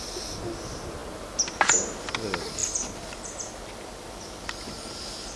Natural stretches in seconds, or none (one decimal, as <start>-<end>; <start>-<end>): 0.0-5.4

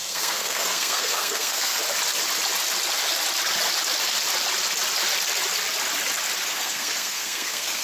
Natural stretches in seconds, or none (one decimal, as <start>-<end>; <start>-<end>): 1.8-6.5

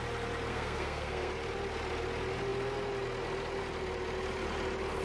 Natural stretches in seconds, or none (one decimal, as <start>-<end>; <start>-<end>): 0.0-0.5; 1.3-5.0

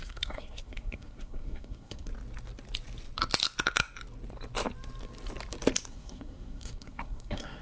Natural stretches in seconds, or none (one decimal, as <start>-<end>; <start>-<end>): 2.1-5.9

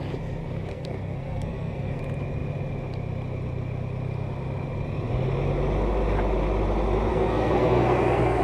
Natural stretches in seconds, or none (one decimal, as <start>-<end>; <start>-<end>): 0.0-0.7; 2.0-7.1

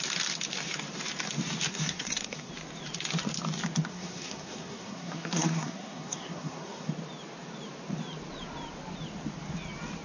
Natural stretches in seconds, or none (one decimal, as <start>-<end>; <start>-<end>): 0.0-1.7; 2.5-3.9; 6.9-10.0